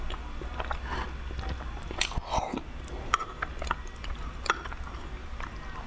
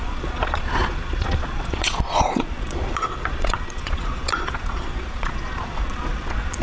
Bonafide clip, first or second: first